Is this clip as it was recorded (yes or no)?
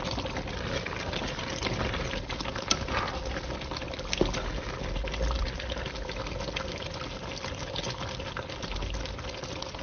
yes